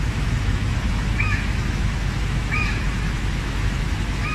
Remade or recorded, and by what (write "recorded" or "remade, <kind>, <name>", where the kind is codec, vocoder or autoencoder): remade, autoencoder, DAC-VAE